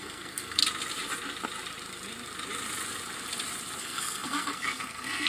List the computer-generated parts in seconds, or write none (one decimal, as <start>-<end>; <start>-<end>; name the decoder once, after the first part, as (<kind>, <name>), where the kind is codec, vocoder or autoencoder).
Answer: 0.0-0.6 (codec, SNAC); 3.8-5.3